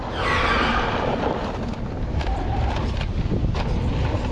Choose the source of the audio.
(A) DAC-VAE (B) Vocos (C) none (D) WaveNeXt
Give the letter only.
C